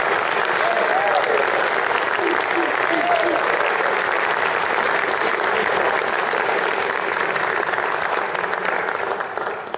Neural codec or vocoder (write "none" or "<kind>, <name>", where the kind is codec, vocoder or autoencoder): none